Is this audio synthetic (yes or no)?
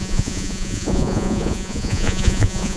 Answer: yes